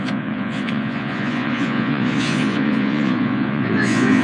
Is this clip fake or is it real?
fake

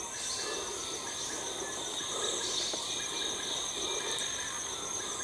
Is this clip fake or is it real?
real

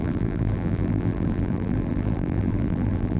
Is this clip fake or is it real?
fake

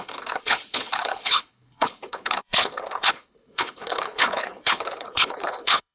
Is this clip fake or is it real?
fake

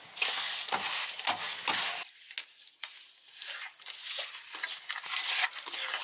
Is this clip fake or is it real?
real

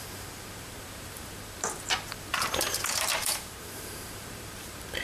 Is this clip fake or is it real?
fake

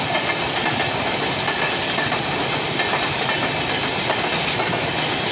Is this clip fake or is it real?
real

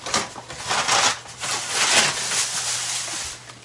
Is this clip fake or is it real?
real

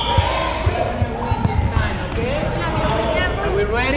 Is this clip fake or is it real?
real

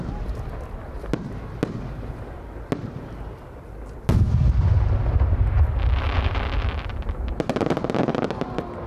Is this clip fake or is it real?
real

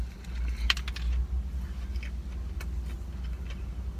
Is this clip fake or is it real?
real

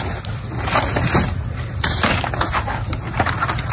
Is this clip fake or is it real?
real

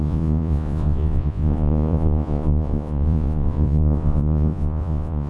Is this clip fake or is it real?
fake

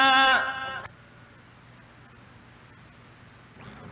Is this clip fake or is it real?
real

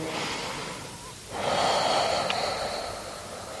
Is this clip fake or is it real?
real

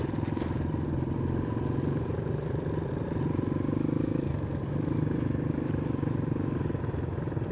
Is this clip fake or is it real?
real